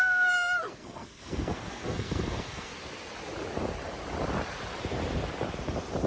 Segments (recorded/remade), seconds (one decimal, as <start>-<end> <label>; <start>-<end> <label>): 0.0-2.7 remade; 2.7-6.1 recorded